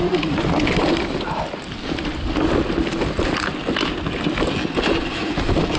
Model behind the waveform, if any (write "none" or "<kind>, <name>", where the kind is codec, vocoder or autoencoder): none